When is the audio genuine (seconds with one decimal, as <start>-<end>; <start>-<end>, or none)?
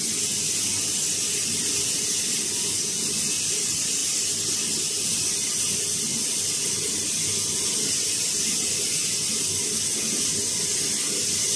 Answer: 0.0-11.6